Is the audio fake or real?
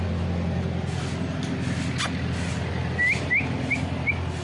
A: real